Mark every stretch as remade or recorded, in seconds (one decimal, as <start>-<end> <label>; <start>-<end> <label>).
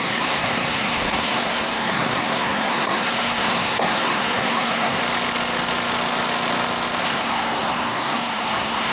0.0-5.0 remade; 5.0-7.0 recorded; 7.0-8.9 remade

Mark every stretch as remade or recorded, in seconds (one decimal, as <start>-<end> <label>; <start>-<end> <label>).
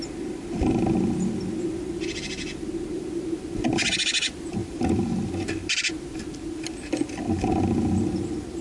0.0-4.6 recorded; 4.6-5.3 remade; 5.3-8.6 recorded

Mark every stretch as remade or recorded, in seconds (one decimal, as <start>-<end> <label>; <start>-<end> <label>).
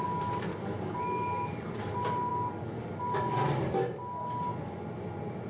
0.0-0.5 recorded; 0.5-1.8 remade; 1.8-2.3 recorded; 2.3-3.3 remade; 3.3-5.5 recorded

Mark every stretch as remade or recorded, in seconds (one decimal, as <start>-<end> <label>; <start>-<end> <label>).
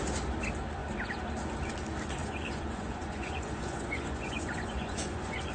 0.0-2.2 recorded; 2.2-5.5 remade